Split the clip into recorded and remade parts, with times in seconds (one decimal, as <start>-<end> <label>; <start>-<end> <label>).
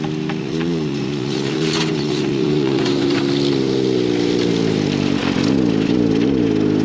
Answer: 0.0-0.4 recorded; 0.4-3.2 remade; 3.2-6.8 recorded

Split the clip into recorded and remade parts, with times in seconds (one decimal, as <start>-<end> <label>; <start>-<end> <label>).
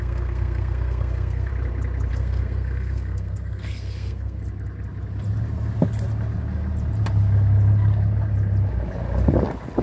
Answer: 0.0-1.5 remade; 1.5-2.1 recorded; 2.1-4.4 remade; 4.4-9.8 recorded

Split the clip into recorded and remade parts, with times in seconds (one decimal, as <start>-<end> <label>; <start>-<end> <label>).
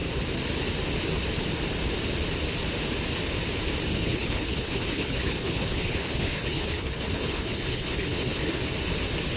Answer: 0.0-3.9 recorded; 3.9-8.6 remade; 8.6-9.4 recorded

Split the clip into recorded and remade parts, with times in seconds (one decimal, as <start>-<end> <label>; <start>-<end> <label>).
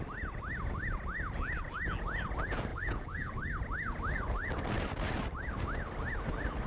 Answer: 0.0-2.7 recorded; 2.7-3.3 remade; 3.3-6.7 recorded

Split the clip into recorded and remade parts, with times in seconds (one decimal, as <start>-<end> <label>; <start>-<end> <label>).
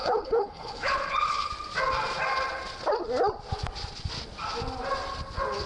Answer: 0.0-1.5 remade; 1.5-5.7 recorded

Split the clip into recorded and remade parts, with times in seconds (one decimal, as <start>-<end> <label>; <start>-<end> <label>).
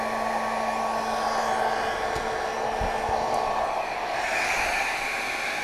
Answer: 0.0-5.6 recorded